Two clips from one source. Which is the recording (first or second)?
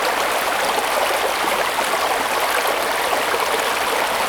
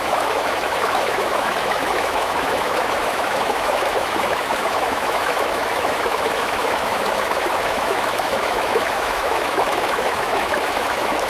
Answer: first